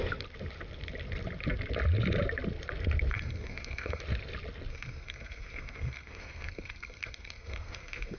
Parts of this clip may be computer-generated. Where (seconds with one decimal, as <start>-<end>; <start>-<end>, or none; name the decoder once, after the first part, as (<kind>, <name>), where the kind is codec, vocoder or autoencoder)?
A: 3.1-4.0 (codec, SNAC); 4.7-8.2